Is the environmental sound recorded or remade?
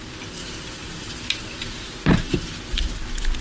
recorded